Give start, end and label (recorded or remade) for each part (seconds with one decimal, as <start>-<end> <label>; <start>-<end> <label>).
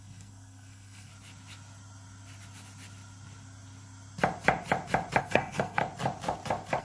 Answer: 0.0-1.1 remade; 1.1-5.2 recorded; 5.2-5.8 remade; 5.8-6.8 recorded